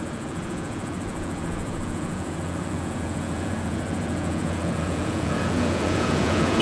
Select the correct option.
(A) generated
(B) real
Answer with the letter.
A